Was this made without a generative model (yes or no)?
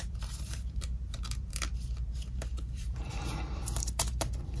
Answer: no